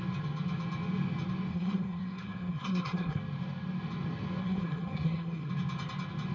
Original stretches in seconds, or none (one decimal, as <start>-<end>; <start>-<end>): 0.0-1.5; 3.2-4.4; 5.5-6.3

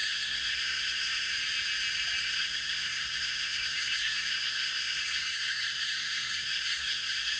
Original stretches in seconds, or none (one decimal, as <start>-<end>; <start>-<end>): 1.3-2.2

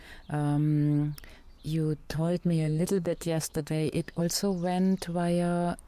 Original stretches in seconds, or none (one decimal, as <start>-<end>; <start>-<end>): 0.0-2.0; 4.2-5.9

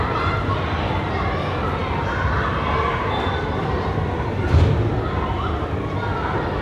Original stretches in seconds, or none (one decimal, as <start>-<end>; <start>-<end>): 0.0-6.6